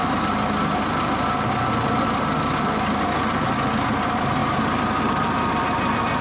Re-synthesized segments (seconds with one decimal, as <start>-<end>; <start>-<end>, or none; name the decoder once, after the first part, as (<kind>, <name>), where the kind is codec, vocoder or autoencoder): 0.0-4.4 (vocoder, BigVGAN v2); 5.0-6.2